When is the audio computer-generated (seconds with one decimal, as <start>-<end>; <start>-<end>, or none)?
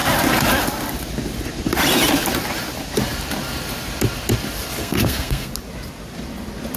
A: 4.8-5.5